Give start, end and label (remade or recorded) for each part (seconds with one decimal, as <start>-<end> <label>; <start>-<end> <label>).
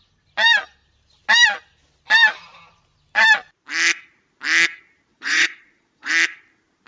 0.0-5.1 recorded; 5.1-6.1 remade; 6.1-6.9 recorded